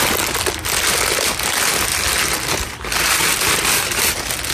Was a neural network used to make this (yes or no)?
no